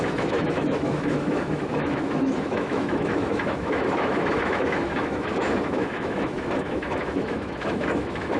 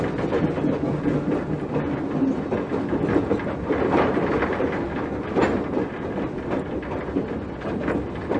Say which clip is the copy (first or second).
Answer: first